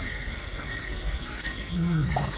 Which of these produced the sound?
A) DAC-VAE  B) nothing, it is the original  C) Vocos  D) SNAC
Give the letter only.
D